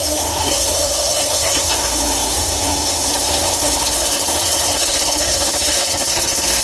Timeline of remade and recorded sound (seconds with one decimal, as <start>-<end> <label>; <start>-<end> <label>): 0.0-6.6 remade